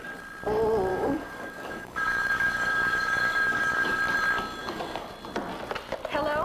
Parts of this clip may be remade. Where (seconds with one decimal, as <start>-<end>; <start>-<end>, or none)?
0.9-4.0; 4.6-5.1